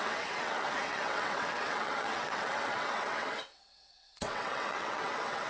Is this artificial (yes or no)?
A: yes